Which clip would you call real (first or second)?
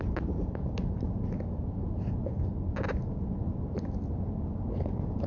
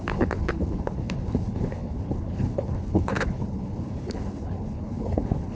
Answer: first